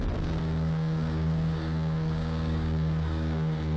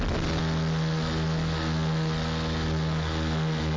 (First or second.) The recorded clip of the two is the second